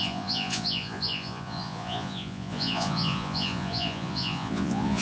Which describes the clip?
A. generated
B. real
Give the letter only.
A